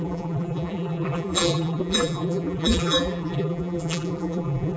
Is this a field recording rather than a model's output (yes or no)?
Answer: no